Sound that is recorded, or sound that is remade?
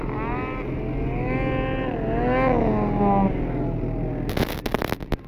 recorded